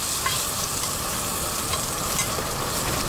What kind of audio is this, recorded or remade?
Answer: recorded